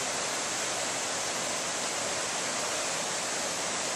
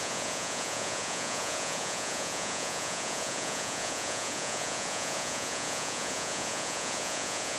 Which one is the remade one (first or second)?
second